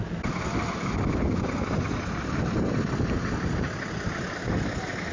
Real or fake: real